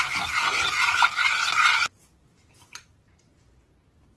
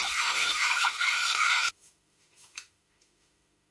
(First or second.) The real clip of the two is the first